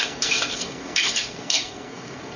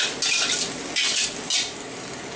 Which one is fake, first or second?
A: first